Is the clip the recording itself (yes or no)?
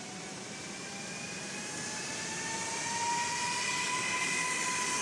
yes